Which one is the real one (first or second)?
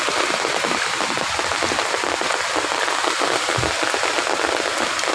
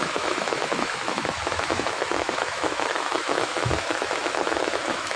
first